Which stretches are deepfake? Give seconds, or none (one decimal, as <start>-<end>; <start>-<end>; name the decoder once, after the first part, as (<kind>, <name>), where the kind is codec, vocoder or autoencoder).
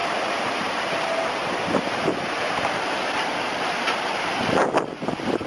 0.0-0.8 (vocoder, BigVGAN v2); 1.4-4.7